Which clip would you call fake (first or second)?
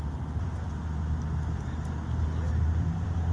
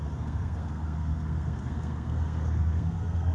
second